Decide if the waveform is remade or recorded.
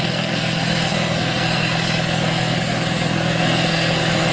remade